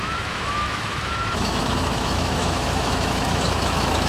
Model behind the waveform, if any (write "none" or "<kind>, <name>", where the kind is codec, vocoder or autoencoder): autoencoder, DAC-VAE